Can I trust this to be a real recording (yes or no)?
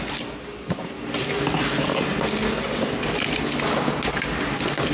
yes